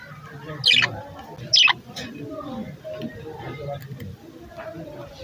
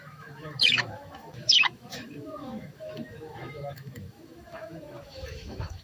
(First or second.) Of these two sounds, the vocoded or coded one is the second